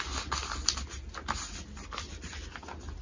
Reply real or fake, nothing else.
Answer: real